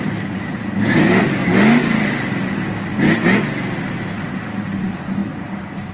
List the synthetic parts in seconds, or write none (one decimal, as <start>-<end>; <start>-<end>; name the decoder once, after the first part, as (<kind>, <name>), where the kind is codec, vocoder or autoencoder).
0.0-1.4 (vocoder, BigVGAN v2); 3.9-5.2